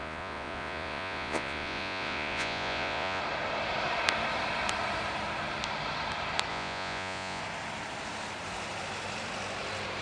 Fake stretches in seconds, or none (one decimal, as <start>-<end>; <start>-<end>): 0.0-3.2; 6.5-7.4